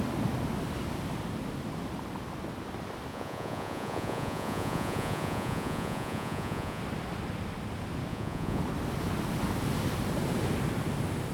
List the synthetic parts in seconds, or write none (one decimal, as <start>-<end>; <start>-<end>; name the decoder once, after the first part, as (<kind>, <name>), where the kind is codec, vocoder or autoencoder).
3.1-6.8 (vocoder, Vocos); 8.1-8.6